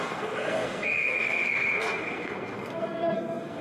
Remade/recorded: remade